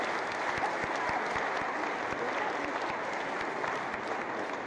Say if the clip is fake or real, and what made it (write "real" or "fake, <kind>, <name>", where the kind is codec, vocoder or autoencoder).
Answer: real